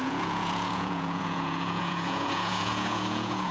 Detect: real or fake fake